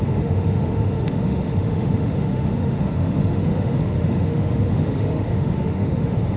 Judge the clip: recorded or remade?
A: remade